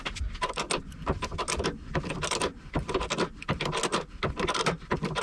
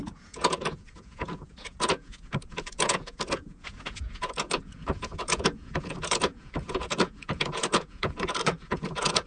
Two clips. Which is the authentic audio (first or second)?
first